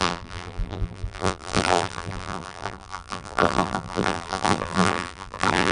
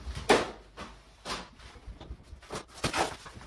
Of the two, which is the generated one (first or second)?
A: first